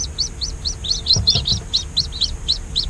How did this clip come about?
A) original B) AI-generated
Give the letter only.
A